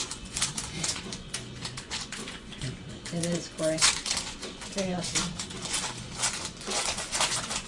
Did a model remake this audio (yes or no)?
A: yes